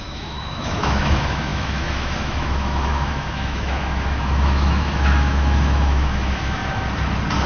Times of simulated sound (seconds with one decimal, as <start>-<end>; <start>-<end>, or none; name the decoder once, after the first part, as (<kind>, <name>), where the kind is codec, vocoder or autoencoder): 0.0-6.6 (autoencoder, DAC-VAE)